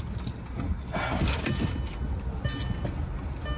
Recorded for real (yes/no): yes